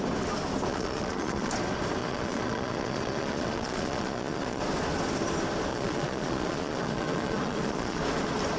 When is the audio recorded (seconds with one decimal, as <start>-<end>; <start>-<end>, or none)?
0.0-0.7; 1.5-2.0; 4.6-5.7; 8.0-8.6